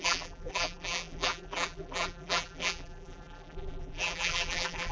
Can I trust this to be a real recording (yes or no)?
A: no